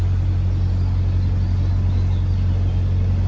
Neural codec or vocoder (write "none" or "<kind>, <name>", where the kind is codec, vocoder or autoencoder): none